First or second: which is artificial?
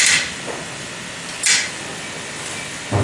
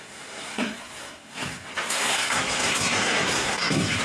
second